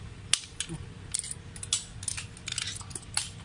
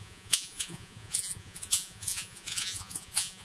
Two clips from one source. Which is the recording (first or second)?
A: first